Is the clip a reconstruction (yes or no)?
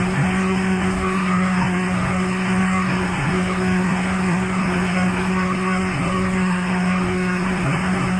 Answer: yes